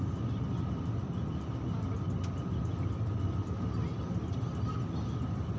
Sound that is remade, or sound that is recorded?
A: recorded